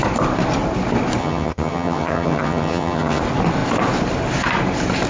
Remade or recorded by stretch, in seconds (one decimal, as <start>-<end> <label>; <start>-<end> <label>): 0.0-1.2 recorded; 1.2-3.2 remade; 3.2-5.1 recorded